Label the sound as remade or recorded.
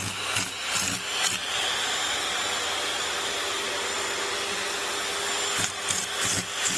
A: recorded